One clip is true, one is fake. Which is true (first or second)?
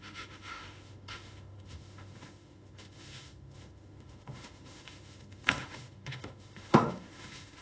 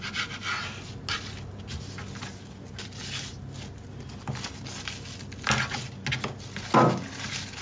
second